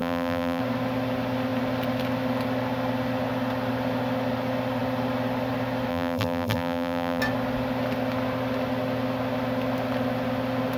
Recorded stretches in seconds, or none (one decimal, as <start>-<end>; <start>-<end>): 0.6-5.9; 7.2-10.8